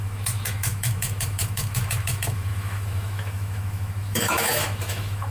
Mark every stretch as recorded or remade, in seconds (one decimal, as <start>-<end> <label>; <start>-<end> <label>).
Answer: 0.0-5.3 remade